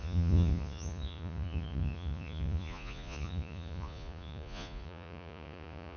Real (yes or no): no